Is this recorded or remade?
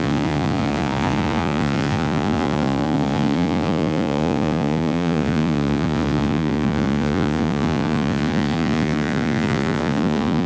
remade